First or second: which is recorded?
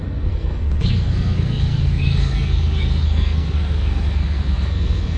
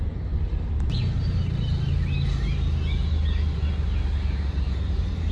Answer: second